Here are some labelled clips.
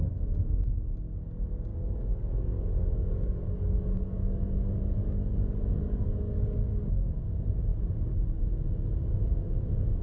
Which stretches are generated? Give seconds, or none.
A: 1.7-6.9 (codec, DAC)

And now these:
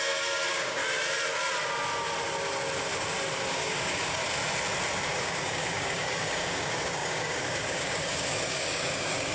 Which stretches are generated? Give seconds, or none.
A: 0.0-0.8 (codec, DAC); 3.5-4.2; 5.2-9.3

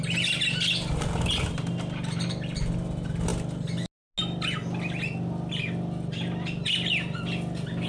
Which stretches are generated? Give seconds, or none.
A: none

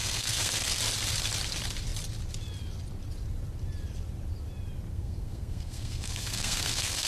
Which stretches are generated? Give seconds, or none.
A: 0.0-0.8 (codec, SNAC); 4.9-7.1